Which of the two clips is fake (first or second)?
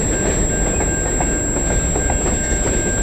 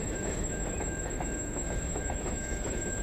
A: second